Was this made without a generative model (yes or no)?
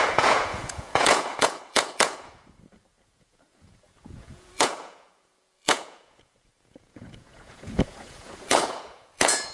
no